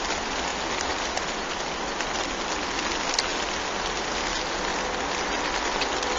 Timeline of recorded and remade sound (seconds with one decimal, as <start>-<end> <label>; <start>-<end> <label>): 0.0-6.2 recorded